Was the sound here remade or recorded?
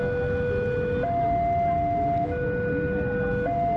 recorded